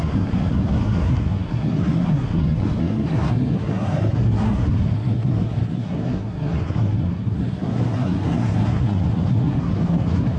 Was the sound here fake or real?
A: fake